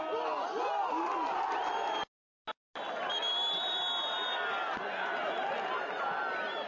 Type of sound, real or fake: real